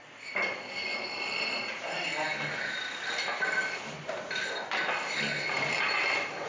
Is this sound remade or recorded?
recorded